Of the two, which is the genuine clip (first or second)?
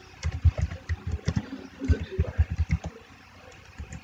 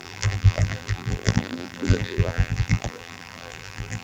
first